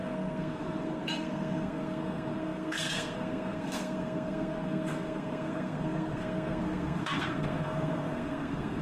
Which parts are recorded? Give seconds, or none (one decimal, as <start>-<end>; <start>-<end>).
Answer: none